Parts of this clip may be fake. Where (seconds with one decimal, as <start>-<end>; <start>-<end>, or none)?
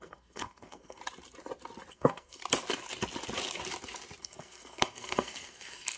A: 0.0-1.0; 1.9-2.4; 4.2-6.0